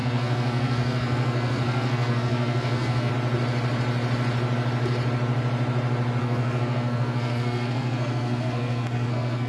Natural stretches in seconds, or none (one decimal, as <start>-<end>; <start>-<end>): 3.1-6.2